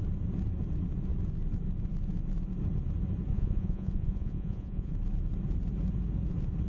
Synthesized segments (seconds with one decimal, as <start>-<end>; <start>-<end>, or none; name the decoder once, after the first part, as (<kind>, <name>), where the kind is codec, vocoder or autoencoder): 3.3-4.9 (vocoder, Vocos)